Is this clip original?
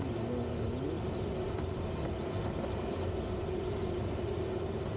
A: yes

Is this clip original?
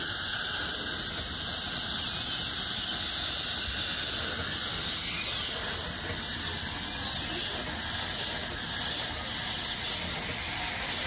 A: yes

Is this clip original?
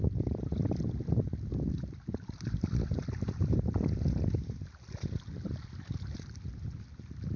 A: yes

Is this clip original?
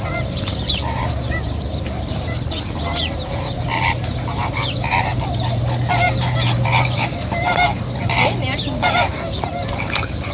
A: no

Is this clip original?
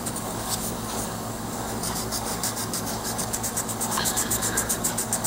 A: no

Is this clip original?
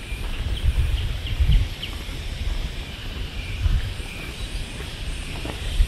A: no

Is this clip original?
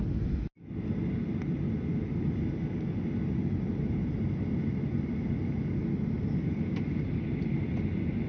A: yes